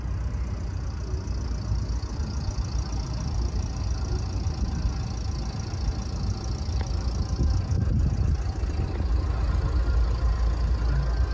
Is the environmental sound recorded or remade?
recorded